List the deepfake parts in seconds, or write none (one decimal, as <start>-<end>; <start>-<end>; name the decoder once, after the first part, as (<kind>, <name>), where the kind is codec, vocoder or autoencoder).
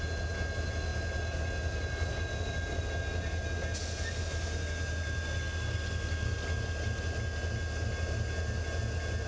none